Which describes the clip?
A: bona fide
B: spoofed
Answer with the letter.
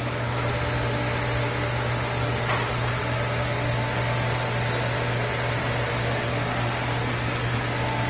A